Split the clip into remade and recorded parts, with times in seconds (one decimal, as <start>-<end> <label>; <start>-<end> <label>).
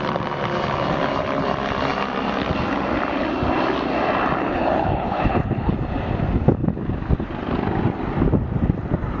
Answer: 0.0-4.4 recorded; 4.4-5.7 remade; 5.7-9.2 recorded